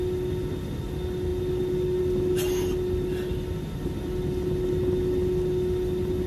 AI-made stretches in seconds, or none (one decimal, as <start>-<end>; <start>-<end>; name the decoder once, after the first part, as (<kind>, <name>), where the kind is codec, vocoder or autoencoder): none